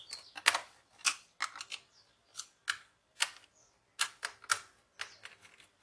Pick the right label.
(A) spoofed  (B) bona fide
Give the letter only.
B